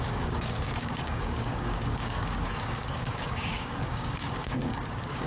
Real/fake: fake